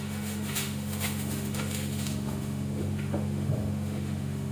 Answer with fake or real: fake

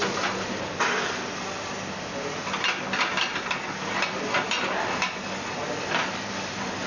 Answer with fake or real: real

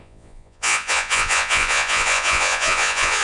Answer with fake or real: fake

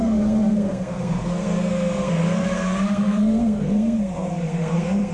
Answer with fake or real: fake